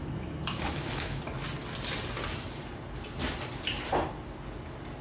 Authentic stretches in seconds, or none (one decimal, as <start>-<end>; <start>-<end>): 1.2-5.0